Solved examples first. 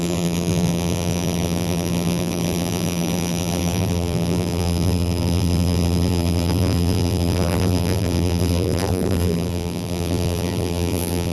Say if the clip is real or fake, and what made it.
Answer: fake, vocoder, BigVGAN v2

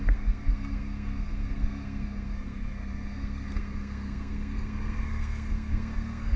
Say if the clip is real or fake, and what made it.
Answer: fake, codec, SNAC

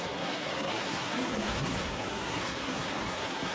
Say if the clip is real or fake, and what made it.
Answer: fake, codec, SNAC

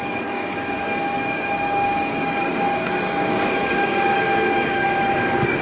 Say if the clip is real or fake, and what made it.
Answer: fake, codec, DAC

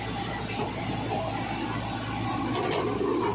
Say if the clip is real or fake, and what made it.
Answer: real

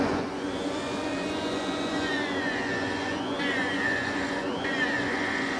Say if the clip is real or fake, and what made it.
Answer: fake, vocoder, Vocos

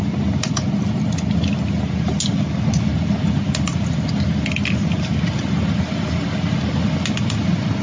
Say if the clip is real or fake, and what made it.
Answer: real